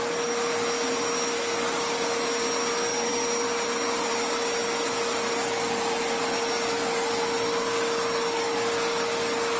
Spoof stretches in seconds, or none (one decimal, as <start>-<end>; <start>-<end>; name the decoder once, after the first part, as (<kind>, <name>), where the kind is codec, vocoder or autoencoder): none